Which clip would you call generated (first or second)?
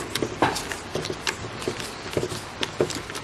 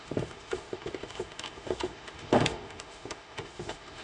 second